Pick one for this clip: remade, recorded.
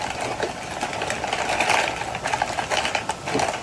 recorded